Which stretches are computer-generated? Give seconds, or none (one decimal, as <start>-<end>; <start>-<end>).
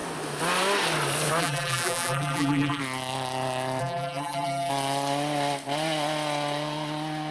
1.4-2.8; 3.8-4.7